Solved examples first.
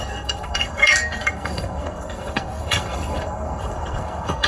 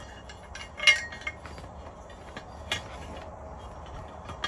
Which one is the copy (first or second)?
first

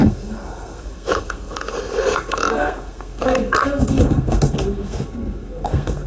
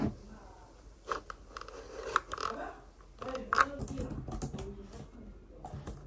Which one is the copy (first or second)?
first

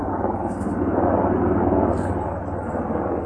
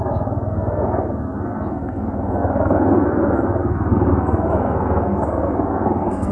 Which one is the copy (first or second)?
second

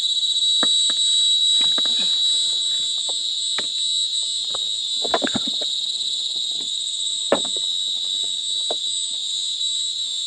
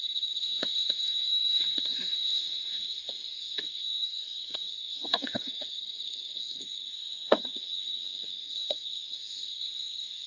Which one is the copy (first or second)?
second